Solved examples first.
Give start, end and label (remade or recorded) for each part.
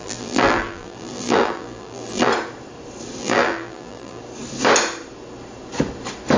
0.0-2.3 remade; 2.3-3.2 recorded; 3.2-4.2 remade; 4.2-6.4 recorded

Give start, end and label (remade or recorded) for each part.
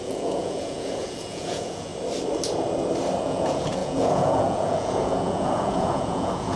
0.0-1.9 remade; 1.9-3.2 recorded; 3.2-6.6 remade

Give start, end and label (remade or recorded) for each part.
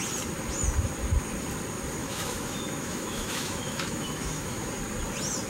0.0-2.0 recorded; 2.0-4.7 remade; 4.7-5.5 recorded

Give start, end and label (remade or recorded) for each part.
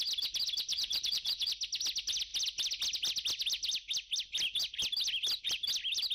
0.0-0.7 recorded; 0.7-1.5 remade; 1.5-6.1 recorded